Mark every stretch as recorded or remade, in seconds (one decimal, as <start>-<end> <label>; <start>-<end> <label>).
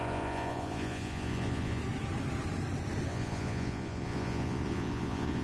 0.0-1.8 remade; 1.8-3.1 recorded; 3.1-5.4 remade